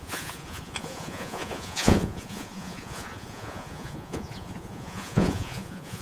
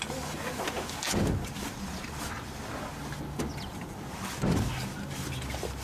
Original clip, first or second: second